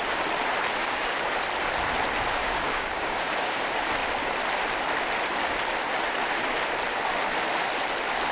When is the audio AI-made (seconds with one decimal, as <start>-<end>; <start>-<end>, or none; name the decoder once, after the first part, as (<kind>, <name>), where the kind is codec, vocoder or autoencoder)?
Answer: 0.8-1.3 (codec, DAC); 2.4-3.6